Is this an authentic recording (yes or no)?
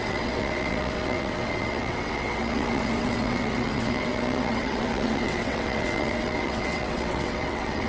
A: no